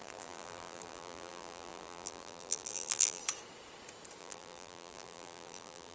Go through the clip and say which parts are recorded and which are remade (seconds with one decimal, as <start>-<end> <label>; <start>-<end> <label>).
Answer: 0.0-3.2 remade; 3.2-4.2 recorded; 4.2-5.9 remade